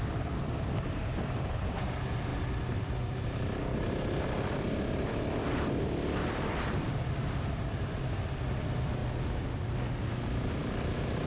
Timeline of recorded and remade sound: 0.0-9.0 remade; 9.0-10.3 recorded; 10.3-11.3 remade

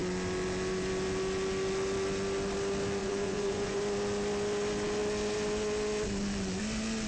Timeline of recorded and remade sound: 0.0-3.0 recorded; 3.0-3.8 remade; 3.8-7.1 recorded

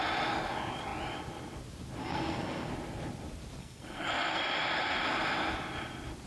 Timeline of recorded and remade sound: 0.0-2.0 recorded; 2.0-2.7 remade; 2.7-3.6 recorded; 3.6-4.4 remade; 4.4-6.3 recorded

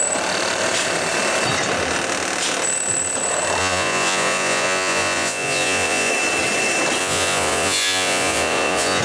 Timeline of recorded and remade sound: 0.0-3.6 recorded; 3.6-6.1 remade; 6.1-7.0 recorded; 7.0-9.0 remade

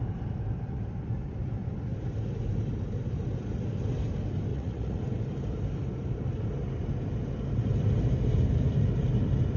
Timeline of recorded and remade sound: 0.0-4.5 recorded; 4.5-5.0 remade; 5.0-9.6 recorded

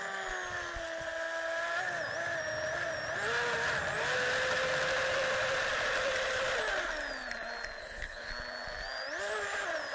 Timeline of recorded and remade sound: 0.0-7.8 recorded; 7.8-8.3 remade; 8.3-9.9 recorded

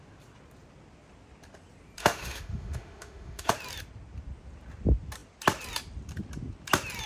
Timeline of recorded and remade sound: 0.0-2.0 recorded; 2.0-3.5 remade; 3.5-7.1 recorded

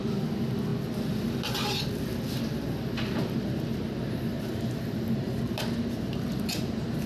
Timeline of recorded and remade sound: 0.0-4.3 recorded; 4.3-5.4 remade; 5.4-7.1 recorded